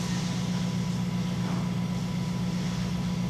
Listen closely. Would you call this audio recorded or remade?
recorded